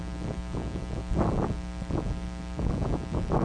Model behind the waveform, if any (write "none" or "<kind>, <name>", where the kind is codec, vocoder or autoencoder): none